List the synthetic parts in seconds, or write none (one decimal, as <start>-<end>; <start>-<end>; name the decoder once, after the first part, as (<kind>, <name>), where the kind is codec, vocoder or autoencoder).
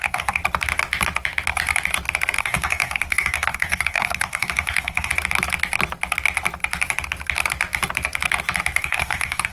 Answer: 0.0-0.4 (codec, DAC); 2.4-5.1; 8.8-9.5